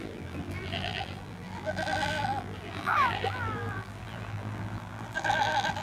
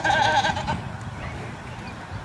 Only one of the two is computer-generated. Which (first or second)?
first